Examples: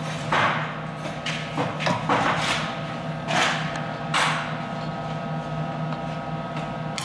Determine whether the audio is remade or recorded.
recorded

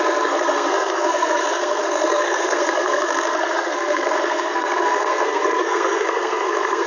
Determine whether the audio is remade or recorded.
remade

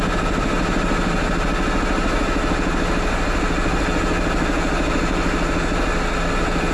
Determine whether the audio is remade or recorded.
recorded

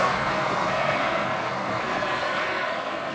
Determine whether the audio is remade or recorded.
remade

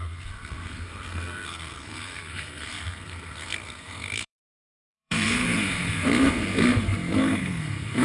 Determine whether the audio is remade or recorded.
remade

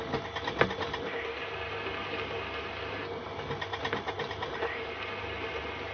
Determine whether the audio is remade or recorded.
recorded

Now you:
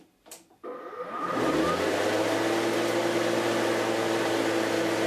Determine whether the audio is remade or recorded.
recorded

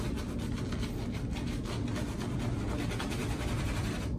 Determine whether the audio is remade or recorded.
recorded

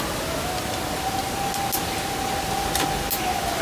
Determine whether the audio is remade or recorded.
recorded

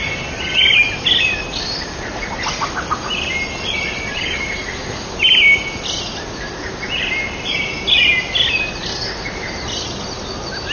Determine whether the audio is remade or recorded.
recorded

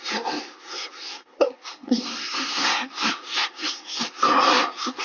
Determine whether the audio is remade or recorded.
remade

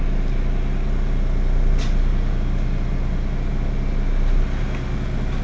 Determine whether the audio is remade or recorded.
recorded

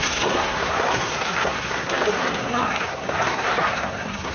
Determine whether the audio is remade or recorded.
remade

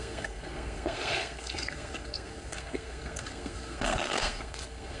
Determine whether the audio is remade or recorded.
remade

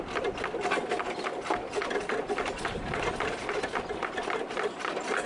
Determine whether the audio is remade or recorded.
recorded